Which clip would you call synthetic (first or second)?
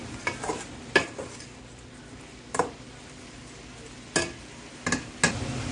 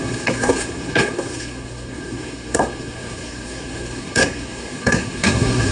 second